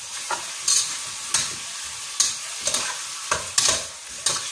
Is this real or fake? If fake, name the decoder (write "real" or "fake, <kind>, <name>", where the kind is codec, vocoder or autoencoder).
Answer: real